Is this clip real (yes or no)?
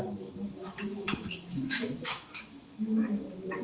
no